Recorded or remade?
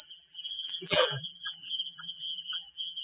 remade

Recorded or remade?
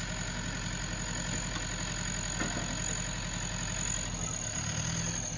recorded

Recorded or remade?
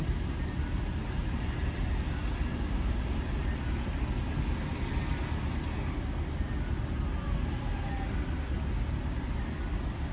recorded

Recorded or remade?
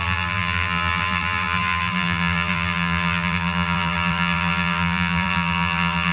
remade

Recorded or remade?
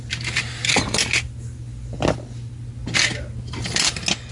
recorded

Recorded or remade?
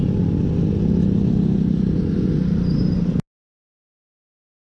recorded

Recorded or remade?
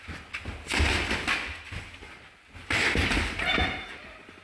recorded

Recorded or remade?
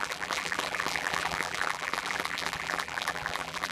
remade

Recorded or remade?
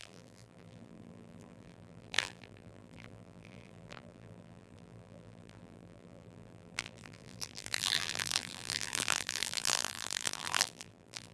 remade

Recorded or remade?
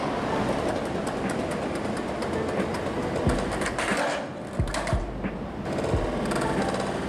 recorded